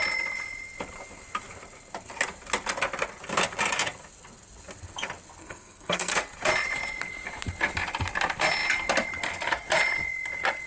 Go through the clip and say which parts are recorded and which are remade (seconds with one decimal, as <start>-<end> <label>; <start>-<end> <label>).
0.0-5.4 recorded; 5.4-6.1 remade; 6.1-10.7 recorded